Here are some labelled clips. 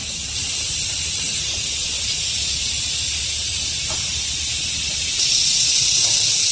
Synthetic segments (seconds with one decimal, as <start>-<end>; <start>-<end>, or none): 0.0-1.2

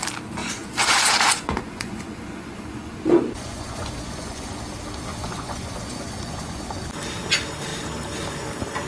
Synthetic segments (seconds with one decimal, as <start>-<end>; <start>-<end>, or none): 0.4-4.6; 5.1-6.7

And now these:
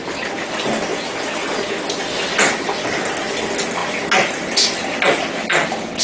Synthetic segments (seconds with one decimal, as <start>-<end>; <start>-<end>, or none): none